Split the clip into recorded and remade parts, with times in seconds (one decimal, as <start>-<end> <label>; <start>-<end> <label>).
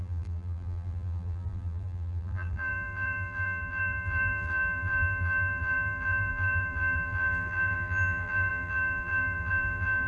0.0-10.1 remade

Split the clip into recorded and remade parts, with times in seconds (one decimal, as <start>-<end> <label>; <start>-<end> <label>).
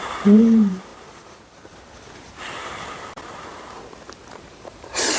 0.0-5.2 remade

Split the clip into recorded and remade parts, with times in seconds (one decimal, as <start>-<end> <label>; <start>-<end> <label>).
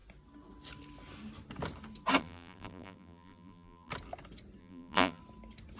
0.0-2.2 recorded; 2.2-3.9 remade; 3.9-4.6 recorded; 4.6-5.2 remade; 5.2-5.8 recorded